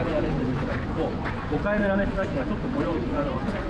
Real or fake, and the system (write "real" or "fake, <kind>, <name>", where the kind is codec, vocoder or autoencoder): fake, vocoder, Vocos